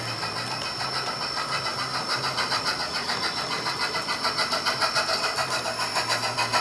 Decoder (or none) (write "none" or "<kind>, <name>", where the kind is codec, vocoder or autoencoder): none